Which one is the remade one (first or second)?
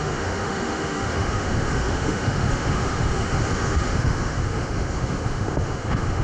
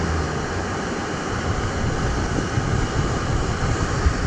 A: first